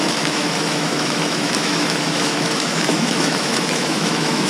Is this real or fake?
fake